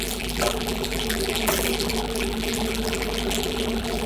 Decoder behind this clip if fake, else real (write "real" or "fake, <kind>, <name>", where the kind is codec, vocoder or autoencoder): fake, vocoder, BigVGAN v2